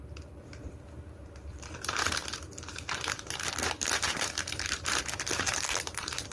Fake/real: fake